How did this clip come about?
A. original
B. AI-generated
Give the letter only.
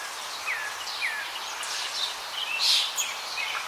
A